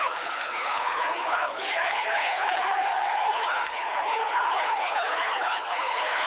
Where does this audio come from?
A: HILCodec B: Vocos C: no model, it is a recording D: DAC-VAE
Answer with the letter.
A